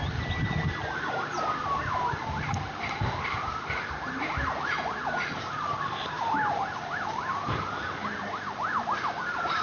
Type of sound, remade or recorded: recorded